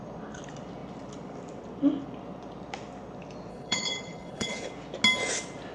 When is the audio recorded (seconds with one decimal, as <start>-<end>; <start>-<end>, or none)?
0.0-3.5; 4.7-5.7